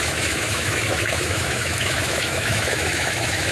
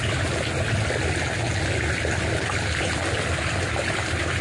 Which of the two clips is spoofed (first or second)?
first